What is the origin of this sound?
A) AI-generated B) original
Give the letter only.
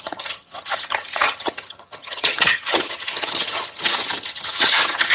A